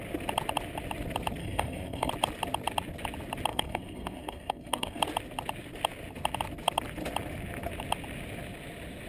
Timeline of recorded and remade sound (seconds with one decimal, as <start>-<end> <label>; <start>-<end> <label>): 0.0-1.4 recorded; 1.4-2.1 remade; 2.1-3.5 recorded; 3.5-5.0 remade; 5.0-9.1 recorded

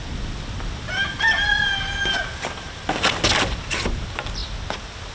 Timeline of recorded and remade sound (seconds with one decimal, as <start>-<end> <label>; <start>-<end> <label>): 0.0-5.1 recorded

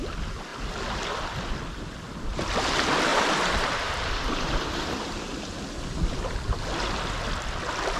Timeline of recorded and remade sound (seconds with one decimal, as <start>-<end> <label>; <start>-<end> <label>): 0.0-3.1 recorded; 3.1-5.6 remade; 5.6-8.0 recorded